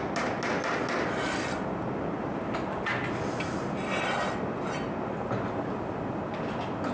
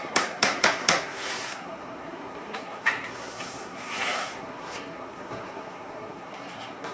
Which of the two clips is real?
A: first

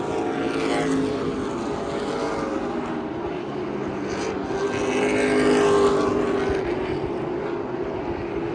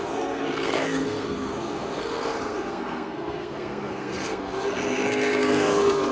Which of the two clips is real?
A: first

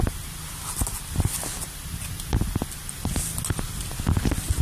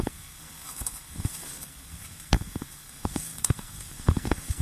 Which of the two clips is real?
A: first